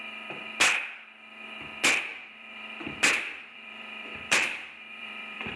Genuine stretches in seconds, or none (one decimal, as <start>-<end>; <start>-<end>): 0.0-2.1